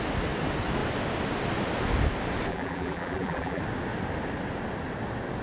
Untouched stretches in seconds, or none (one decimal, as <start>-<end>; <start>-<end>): 0.0-2.5; 3.6-5.4